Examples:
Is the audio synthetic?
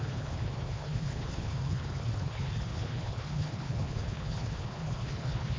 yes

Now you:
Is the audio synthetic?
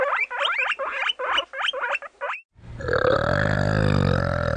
no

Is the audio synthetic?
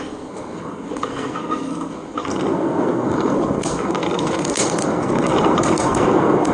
yes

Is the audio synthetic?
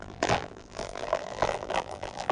yes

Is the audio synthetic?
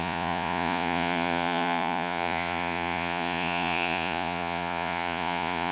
yes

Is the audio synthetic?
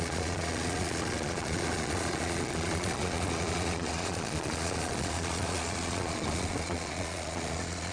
yes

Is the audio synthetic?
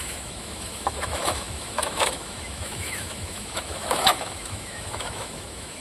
yes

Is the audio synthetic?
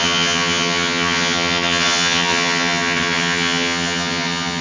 yes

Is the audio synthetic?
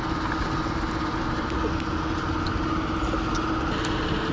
no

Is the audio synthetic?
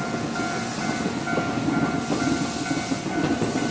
no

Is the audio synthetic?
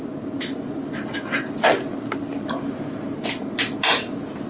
no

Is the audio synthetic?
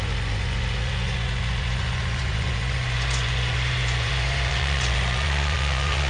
yes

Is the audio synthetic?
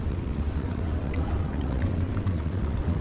yes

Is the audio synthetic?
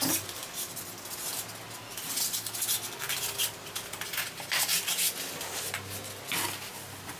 no